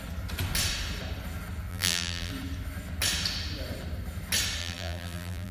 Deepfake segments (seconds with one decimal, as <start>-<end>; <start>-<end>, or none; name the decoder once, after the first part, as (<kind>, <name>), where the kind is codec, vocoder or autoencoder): 1.7-2.3 (vocoder, BigVGAN v2); 4.6-5.5